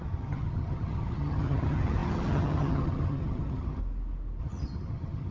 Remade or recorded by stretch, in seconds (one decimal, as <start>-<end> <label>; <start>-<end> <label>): 0.0-3.8 remade; 3.8-4.4 recorded; 4.4-5.3 remade

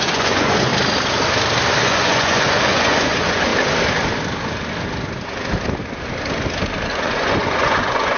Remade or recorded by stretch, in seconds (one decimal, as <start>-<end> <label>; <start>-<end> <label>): 0.0-0.7 remade; 0.7-1.8 recorded; 1.8-3.5 remade; 3.5-6.9 recorded; 6.9-8.2 remade

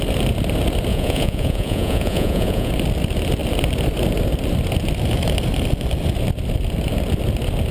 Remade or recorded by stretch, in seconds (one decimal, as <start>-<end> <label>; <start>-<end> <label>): 0.0-0.9 recorded; 0.9-2.7 remade; 2.7-7.7 recorded

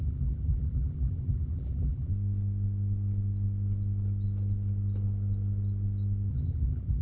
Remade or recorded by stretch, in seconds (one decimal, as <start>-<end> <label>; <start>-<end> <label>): 0.0-2.1 remade; 2.1-6.3 recorded; 6.3-7.0 remade

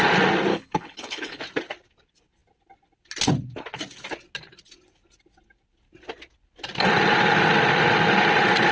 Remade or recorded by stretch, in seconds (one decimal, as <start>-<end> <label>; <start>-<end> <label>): 0.0-0.5 recorded; 0.5-1.4 remade; 1.4-8.7 recorded

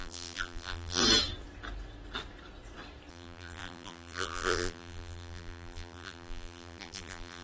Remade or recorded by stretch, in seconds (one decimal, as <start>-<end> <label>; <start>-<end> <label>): 0.0-1.0 remade; 1.0-3.1 recorded; 3.1-7.4 remade